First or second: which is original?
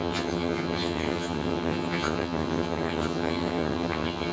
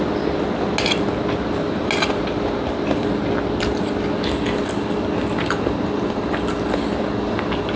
second